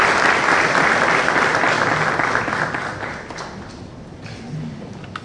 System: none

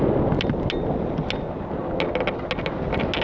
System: none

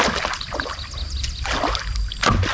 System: none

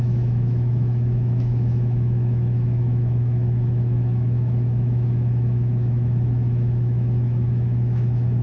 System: autoencoder, DAC-VAE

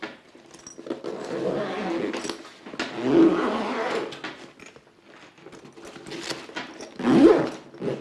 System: none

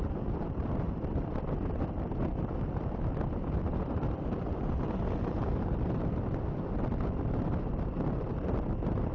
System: none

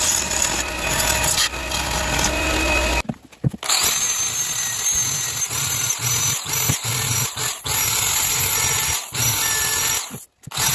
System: none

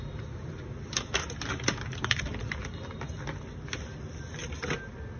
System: none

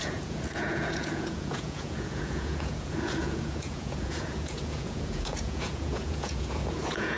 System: vocoder, Vocos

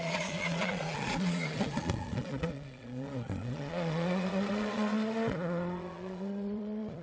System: vocoder, Vocos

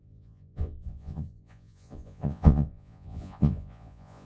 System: vocoder, Vocos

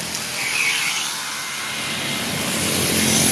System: none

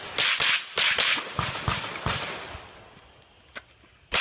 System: none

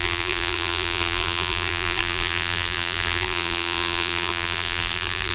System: vocoder, BigVGAN v2